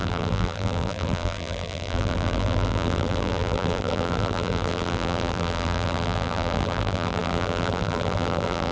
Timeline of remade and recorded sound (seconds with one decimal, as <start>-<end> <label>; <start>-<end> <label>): 0.0-8.7 remade